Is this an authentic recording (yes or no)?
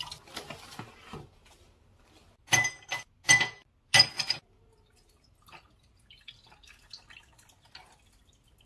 yes